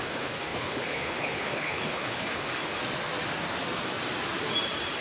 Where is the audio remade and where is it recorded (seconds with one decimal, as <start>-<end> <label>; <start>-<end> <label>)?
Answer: 0.0-2.8 remade; 2.8-5.0 recorded